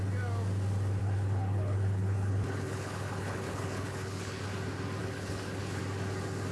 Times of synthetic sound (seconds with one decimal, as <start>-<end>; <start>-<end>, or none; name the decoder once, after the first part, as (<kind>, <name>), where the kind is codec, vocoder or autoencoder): 1.0-4.4 (codec, HILCodec); 5.0-5.8